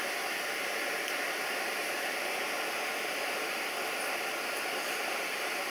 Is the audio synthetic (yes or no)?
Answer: no